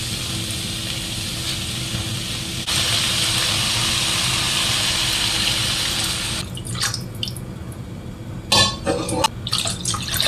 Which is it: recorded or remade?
recorded